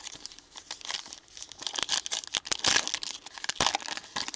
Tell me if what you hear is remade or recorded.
recorded